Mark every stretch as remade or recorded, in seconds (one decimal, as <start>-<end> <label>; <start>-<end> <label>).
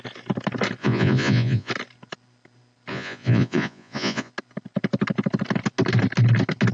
0.0-0.8 recorded; 0.8-1.7 remade; 1.7-2.9 recorded; 2.9-4.3 remade; 4.3-6.7 recorded